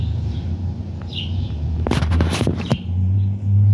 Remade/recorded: remade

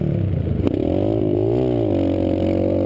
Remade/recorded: recorded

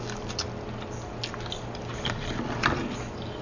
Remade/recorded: recorded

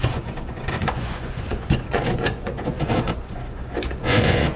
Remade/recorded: remade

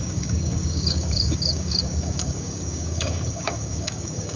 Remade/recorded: remade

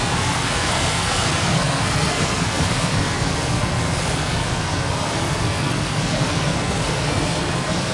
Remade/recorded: remade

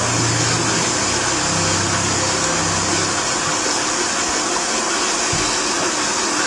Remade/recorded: recorded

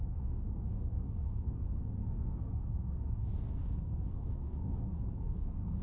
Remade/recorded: remade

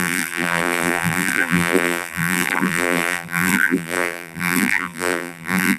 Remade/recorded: remade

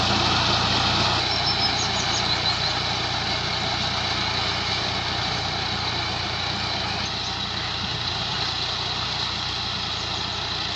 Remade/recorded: recorded